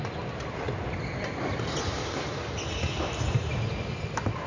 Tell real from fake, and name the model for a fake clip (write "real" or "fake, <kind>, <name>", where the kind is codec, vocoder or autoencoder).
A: real